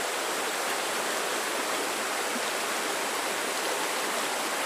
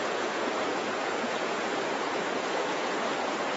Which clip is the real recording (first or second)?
first